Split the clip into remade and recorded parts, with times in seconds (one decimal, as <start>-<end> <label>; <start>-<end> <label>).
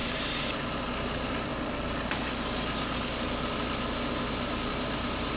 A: 0.0-1.5 remade; 1.5-4.7 recorded; 4.7-5.4 remade